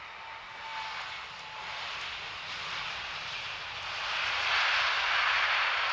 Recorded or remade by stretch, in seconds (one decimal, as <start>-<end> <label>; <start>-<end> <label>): 0.0-5.9 recorded